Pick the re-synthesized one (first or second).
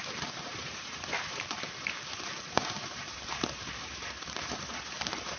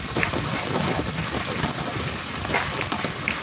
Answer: first